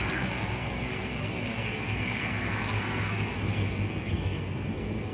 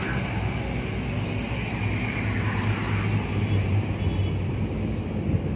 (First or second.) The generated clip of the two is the first